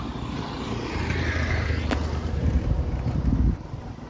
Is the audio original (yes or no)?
yes